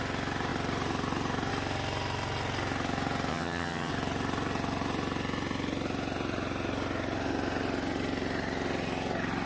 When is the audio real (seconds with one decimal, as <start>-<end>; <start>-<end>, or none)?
0.0-3.3; 3.9-9.5